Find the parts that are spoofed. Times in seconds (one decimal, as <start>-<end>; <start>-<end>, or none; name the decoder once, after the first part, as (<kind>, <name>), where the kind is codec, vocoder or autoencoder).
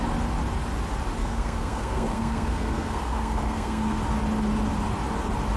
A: 1.2-4.0 (codec, SNAC)